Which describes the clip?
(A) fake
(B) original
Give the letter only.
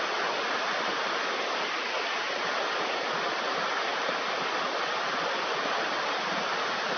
B